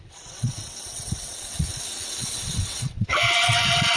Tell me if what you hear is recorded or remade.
remade